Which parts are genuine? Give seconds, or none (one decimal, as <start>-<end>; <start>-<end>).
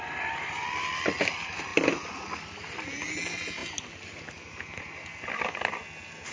0.0-6.3